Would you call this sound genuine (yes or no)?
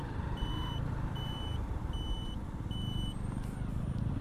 yes